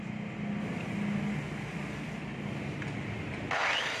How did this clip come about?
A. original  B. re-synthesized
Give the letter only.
A